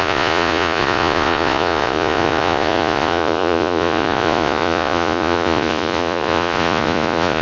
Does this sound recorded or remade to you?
remade